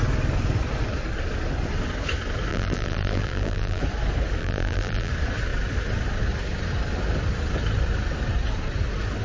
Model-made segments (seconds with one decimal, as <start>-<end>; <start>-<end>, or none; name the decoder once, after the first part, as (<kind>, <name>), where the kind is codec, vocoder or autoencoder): 2.5-3.8 (vocoder, BigVGAN v2); 4.4-5.1